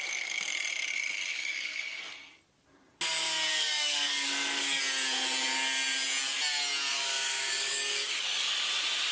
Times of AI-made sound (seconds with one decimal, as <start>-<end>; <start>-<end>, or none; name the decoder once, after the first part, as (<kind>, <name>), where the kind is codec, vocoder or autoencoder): 1.3-2.0 (codec, DAC); 3.5-4.8; 6.9-8.5